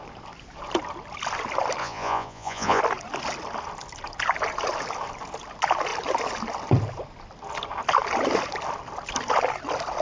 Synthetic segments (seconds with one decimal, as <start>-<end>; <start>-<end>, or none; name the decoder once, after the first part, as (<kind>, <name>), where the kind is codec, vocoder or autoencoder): 1.8-2.8 (vocoder, Vocos)